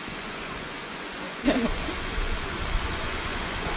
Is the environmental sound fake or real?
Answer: fake